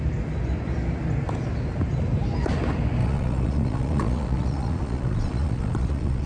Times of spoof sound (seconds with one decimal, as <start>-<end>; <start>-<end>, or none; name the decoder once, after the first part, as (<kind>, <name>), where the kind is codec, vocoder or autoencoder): 3.0-6.3 (vocoder, Vocos)